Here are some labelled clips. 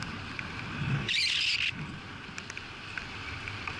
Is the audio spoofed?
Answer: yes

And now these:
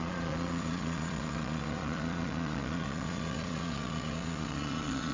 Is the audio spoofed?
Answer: yes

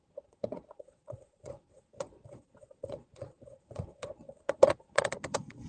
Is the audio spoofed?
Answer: yes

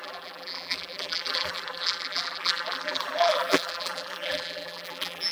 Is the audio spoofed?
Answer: yes